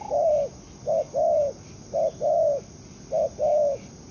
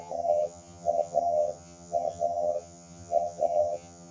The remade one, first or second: second